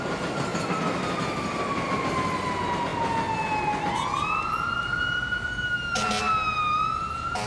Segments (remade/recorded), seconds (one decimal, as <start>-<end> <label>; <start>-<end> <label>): 0.0-7.5 recorded